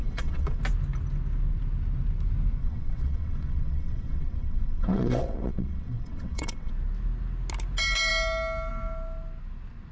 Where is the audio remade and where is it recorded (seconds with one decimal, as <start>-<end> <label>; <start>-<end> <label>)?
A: 0.0-0.6 remade; 0.6-2.6 recorded; 2.6-6.7 remade; 6.7-9.9 recorded